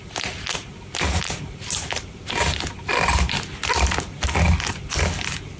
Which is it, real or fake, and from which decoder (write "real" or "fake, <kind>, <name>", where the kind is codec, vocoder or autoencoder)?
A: real